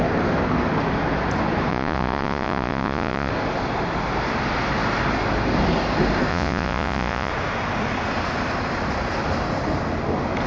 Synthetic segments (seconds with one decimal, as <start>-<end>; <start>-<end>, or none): 1.7-3.3; 6.3-7.3